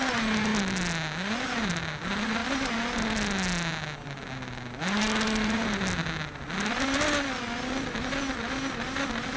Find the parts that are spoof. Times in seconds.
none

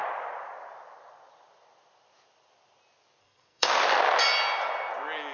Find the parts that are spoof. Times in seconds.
3.2-3.7 (codec, SNAC)

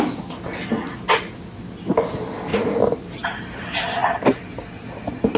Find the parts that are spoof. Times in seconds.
2.5-3.4 (vocoder, BigVGAN v2)

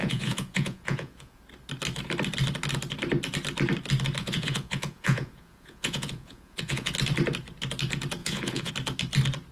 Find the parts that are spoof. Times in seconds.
0.0-1.4 (vocoder, Vocos); 4.2-6.9; 8.2-8.7

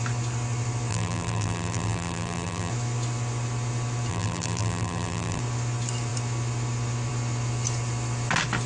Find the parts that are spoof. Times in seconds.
0.9-2.7 (vocoder, BigVGAN v2); 4.1-5.4

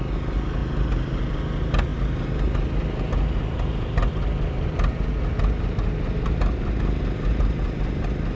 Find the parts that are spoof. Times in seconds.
none